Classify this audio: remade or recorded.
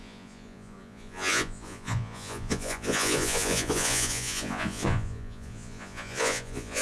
remade